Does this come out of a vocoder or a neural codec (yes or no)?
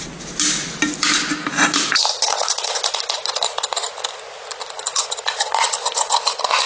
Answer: no